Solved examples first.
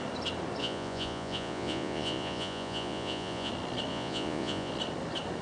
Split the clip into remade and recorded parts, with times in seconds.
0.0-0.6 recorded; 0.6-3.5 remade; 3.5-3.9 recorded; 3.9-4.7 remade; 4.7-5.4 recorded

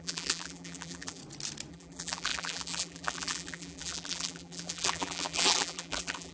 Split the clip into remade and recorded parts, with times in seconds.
0.0-1.2 remade; 1.2-1.7 recorded; 1.7-6.3 remade

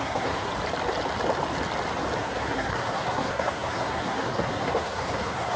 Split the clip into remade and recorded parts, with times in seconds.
0.0-0.5 remade; 0.5-2.2 recorded; 2.2-5.6 remade